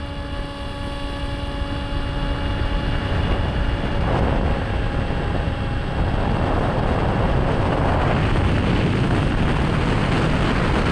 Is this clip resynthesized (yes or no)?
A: no